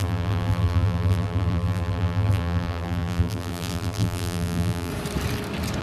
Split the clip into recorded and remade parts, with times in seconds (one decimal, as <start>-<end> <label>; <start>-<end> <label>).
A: 0.0-4.9 remade; 4.9-5.8 recorded